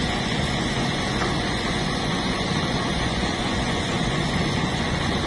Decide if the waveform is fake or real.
fake